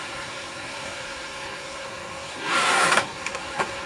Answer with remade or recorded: remade